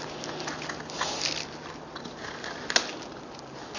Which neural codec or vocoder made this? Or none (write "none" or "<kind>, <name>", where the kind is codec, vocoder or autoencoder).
none